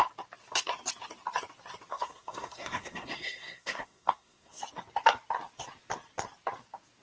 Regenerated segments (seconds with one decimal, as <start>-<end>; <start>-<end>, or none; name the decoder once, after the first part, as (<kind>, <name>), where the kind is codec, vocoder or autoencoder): 1.9-4.6 (codec, SNAC)